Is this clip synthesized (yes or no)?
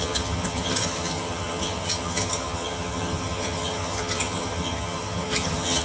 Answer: yes